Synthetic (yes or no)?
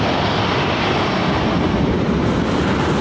no